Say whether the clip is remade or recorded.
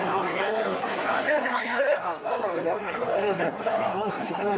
remade